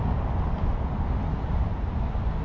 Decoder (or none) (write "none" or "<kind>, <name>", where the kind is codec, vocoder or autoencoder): none